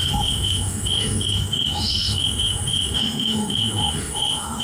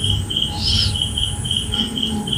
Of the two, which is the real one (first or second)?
second